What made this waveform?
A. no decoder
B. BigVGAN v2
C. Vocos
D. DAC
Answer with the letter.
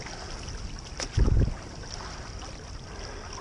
A